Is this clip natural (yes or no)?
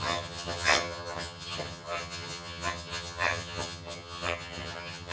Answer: no